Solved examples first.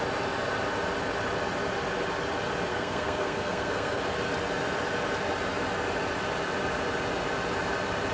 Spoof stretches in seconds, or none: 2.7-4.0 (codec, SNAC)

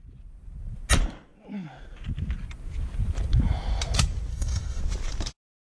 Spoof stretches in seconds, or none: 4.3-4.8 (codec, SNAC)

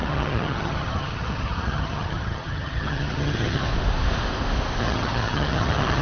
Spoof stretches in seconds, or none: 0.0-3.7 (vocoder, HiFi-GAN); 4.8-6.0

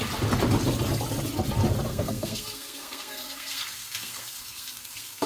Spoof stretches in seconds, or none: 1.9-5.3 (codec, SNAC)